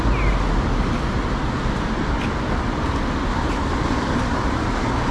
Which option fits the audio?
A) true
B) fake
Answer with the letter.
A